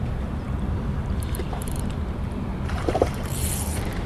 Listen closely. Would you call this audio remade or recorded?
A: remade